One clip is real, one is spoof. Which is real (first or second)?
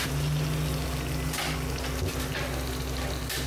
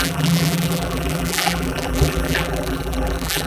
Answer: first